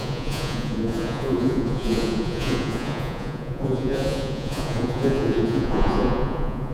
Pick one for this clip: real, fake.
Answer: fake